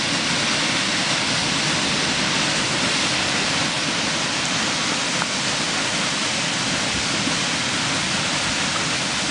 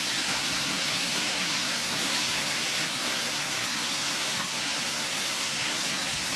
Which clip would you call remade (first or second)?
second